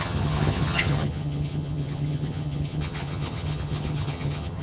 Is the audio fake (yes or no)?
yes